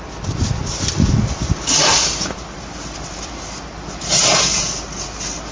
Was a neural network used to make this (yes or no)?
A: no